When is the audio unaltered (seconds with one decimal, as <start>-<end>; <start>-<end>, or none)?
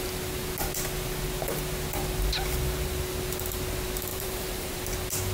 0.0-4.1; 4.8-5.3